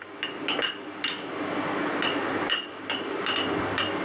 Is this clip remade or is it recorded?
recorded